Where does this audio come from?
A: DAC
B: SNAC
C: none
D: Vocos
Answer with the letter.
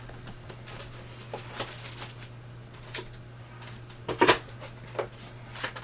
C